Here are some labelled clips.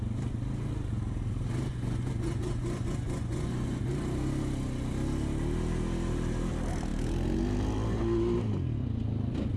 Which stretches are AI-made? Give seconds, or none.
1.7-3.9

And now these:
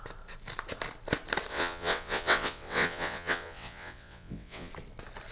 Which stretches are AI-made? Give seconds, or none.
1.5-4.7

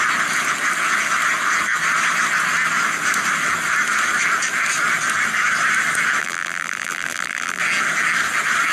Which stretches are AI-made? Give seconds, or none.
6.2-7.6

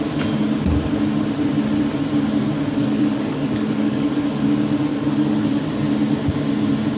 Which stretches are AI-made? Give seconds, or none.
2.8-4.2; 4.9-5.6

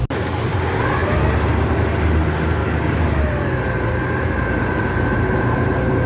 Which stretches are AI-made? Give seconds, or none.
2.6-3.2

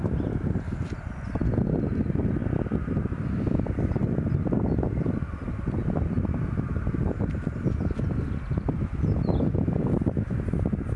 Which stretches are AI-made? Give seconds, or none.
none